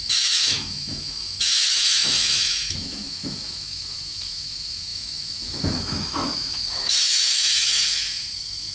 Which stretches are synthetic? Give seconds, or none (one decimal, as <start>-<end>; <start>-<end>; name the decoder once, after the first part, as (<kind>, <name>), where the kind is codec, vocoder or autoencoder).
0.0-8.7 (autoencoder, DAC-VAE)

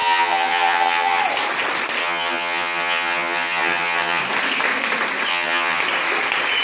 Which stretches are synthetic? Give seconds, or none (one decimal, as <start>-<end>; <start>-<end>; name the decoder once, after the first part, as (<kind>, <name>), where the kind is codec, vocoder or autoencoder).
0.0-1.2 (vocoder, HiFi-GAN); 2.0-4.2; 5.3-5.8

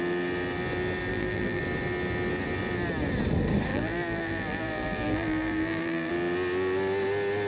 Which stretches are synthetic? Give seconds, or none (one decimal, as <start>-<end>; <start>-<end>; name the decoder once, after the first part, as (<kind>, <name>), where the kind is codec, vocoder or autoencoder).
1.1-1.6 (vocoder, BigVGAN v2); 3.7-6.1

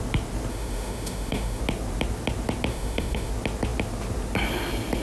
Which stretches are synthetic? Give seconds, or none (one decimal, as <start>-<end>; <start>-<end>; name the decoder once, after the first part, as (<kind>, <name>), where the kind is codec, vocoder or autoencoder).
0.5-1.6 (autoencoder, DAC-VAE); 2.7-3.3

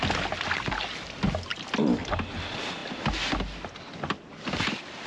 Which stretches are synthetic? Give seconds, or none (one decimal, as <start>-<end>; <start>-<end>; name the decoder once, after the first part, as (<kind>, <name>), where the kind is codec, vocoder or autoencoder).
none